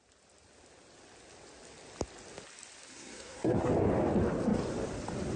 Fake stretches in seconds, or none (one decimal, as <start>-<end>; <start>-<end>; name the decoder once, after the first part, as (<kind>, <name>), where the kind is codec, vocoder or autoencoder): 2.9-3.7 (codec, SNAC)